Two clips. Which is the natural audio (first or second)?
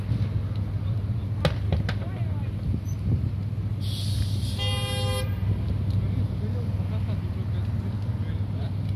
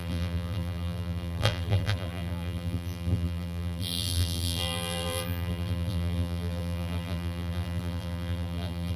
first